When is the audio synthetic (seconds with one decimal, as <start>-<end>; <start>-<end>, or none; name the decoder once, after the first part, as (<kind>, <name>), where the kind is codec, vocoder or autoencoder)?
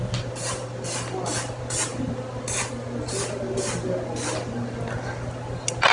none